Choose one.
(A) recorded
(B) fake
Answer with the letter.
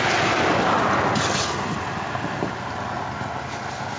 A